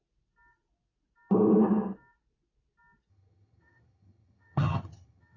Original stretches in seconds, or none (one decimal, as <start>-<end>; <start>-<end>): 0.0-3.1